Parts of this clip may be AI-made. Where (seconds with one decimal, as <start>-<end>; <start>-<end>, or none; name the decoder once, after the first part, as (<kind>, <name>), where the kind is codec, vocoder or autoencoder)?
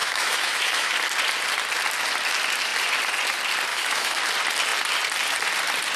0.0-0.9 (autoencoder, DAC-VAE); 3.7-4.2